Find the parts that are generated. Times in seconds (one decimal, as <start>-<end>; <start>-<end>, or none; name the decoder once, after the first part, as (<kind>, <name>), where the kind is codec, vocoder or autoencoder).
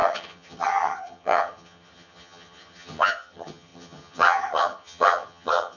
0.0-5.8 (vocoder, HiFi-GAN)